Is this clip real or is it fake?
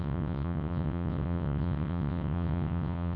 fake